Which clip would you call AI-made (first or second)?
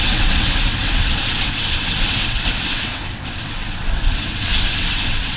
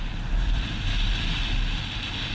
first